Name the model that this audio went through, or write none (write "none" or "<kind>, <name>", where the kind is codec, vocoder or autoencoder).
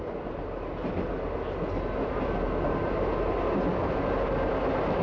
none